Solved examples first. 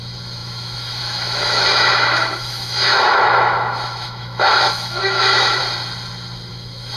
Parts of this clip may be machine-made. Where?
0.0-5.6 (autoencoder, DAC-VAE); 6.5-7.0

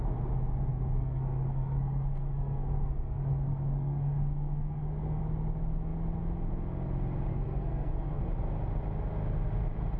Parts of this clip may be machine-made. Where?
0.7-5.2 (codec, SNAC); 7.3-8.2

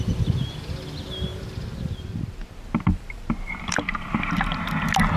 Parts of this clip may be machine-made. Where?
1.3-4.2 (vocoder, BigVGAN v2)

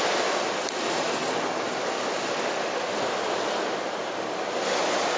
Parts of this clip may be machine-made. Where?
none

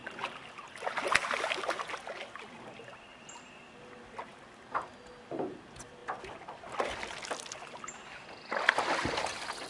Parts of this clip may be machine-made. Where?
none

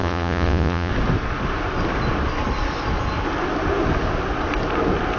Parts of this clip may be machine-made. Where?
0.0-0.9 (vocoder, Vocos)